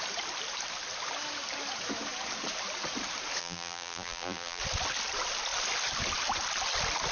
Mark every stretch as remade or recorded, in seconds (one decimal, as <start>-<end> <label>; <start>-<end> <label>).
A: 0.0-3.4 recorded; 3.4-4.6 remade; 4.6-7.1 recorded